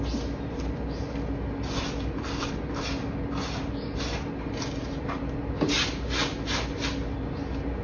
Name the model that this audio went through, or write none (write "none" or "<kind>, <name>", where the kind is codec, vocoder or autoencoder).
none